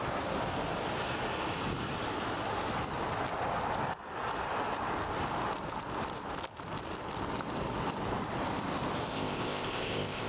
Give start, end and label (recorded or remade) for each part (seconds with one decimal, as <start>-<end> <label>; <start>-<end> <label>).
0.0-9.1 recorded; 9.1-10.3 remade